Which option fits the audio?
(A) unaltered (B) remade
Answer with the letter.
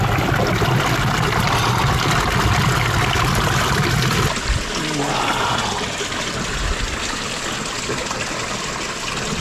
A